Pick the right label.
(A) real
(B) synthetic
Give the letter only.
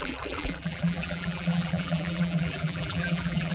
B